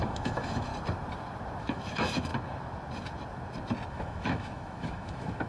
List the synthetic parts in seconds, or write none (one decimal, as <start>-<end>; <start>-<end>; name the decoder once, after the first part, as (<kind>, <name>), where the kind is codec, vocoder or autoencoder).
0.0-0.7 (autoencoder, DAC-VAE); 1.6-2.3; 3.9-5.5

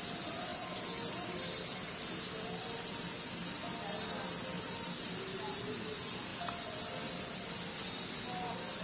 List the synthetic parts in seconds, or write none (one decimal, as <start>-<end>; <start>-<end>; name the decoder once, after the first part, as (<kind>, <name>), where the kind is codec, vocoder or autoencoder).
none

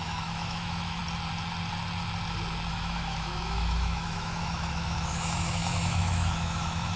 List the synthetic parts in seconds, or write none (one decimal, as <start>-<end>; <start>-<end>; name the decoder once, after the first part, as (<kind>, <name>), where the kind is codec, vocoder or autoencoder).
0.0-1.0 (autoencoder, DAC-VAE); 2.7-7.0

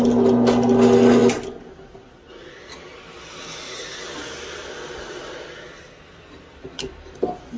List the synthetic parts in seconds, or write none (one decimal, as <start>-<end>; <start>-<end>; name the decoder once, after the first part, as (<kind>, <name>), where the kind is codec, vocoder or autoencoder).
none

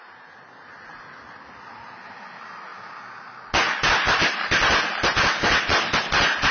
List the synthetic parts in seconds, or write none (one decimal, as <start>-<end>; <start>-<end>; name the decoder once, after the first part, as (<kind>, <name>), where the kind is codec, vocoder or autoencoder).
none

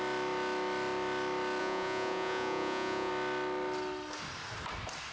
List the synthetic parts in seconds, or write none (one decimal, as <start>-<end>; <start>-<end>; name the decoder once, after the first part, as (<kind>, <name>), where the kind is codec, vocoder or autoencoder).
1.6-3.1 (vocoder, Vocos)